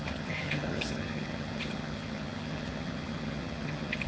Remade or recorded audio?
remade